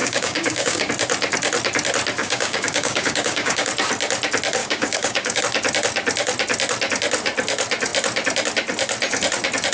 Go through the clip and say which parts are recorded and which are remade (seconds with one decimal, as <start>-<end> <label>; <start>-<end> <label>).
0.0-0.9 remade; 0.9-2.2 recorded; 2.2-3.7 remade; 3.7-4.6 recorded; 4.6-5.4 remade; 5.4-9.7 recorded